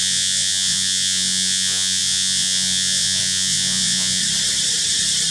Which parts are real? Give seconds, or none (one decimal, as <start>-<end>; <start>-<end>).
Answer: 4.2-5.3